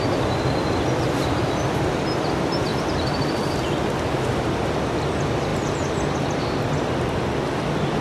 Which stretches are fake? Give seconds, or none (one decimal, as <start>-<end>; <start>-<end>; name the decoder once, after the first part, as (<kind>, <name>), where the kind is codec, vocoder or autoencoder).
none